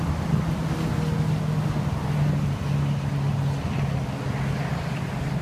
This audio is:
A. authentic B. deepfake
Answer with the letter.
A